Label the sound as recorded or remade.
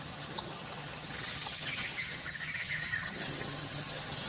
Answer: remade